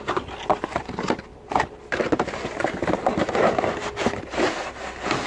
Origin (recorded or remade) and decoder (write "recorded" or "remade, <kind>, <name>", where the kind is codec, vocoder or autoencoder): recorded